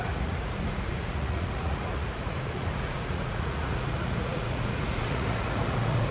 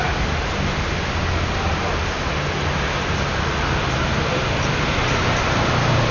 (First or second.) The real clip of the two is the second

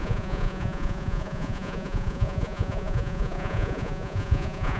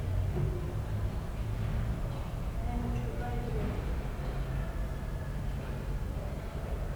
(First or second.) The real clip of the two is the second